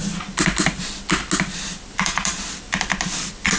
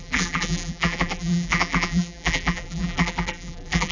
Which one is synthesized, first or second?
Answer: second